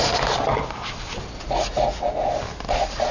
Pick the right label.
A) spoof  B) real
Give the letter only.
B